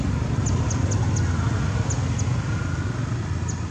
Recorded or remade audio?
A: recorded